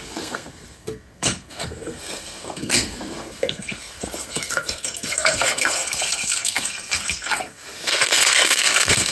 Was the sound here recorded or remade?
remade